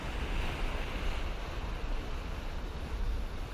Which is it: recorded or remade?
recorded